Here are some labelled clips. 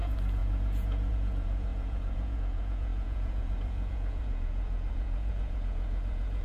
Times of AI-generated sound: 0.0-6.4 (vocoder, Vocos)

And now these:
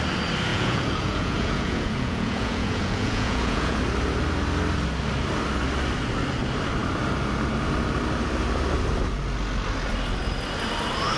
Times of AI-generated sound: 0.5-3.8 (vocoder, Vocos)

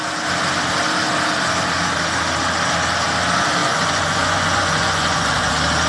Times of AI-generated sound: 3.6-5.5 (vocoder, Vocos)

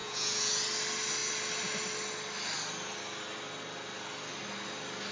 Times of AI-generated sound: 0.0-0.6 (vocoder, Vocos)

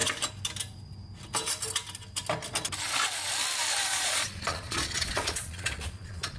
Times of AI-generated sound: 3.8-6.4 (vocoder, Vocos)

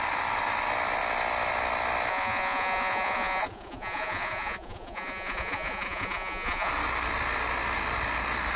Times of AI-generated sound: 2.1-6.7 (vocoder, Vocos)